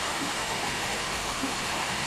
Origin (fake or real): fake